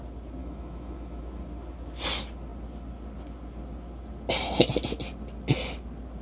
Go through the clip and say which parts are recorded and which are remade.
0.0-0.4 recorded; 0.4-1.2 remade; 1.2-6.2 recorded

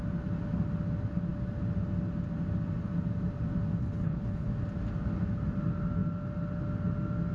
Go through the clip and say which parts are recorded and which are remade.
0.0-3.8 recorded; 3.8-4.5 remade; 4.5-7.3 recorded